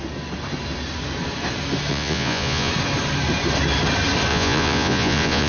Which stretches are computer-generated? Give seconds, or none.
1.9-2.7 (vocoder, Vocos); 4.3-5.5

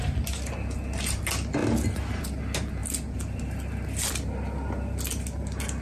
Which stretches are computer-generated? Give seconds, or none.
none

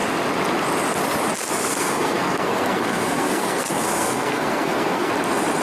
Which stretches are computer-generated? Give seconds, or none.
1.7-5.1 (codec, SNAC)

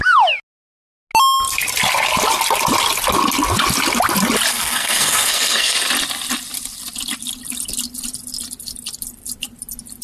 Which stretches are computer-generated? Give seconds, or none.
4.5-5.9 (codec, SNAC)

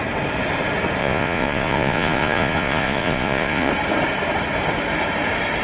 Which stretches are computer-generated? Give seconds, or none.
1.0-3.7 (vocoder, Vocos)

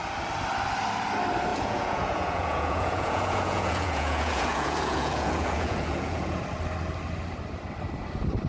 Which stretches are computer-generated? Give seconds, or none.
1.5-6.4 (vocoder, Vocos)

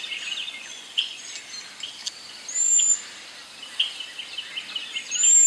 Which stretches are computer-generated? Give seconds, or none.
0.4-1.3 (vocoder, Vocos)